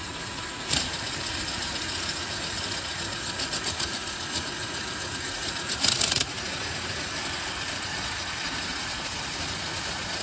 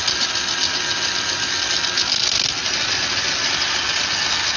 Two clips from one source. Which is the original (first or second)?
second